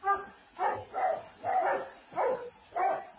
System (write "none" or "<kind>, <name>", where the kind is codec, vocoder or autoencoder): none